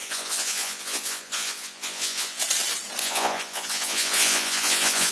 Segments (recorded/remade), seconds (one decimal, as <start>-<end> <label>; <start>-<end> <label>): 0.0-2.4 remade; 2.4-3.0 recorded; 3.0-5.1 remade

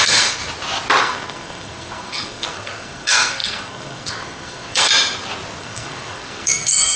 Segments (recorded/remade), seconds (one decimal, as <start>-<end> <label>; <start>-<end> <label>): 0.0-0.4 remade; 0.4-1.0 recorded; 1.0-4.9 remade; 4.9-5.6 recorded; 5.6-7.0 remade

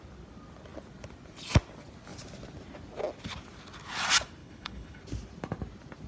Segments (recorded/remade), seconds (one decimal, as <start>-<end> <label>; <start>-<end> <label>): 0.0-4.4 recorded; 4.4-5.0 remade; 5.0-6.1 recorded